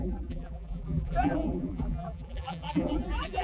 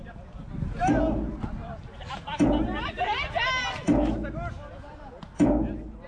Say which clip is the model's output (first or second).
first